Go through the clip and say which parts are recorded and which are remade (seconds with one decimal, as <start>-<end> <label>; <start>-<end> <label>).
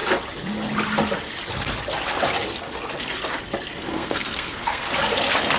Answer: 0.0-3.9 recorded; 3.9-4.8 remade; 4.8-5.6 recorded